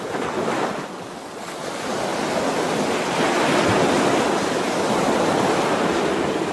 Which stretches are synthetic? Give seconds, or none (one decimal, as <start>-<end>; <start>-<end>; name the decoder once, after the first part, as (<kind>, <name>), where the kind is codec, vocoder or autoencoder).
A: none

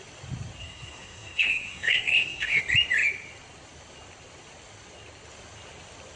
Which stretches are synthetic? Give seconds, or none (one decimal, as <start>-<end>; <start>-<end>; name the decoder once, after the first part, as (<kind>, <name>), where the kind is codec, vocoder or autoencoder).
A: 0.6-2.6 (codec, SNAC)

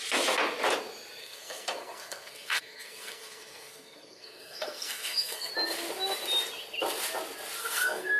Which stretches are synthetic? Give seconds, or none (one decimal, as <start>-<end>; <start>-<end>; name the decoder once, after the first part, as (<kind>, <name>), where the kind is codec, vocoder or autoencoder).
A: 1.2-5.5 (codec, SNAC); 7.6-8.2

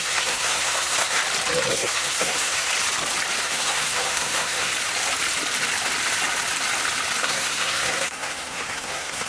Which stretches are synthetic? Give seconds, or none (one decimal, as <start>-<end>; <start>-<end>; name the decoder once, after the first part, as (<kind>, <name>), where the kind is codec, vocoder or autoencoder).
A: 0.0-1.2 (codec, SNAC); 1.7-2.7; 3.4-4.7; 7.2-9.3

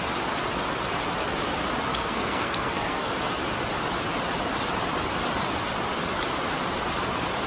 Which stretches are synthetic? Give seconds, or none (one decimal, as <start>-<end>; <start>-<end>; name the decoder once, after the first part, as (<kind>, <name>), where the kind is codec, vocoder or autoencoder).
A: 1.9-3.1 (codec, SNAC)